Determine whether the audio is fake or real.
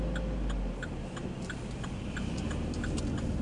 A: real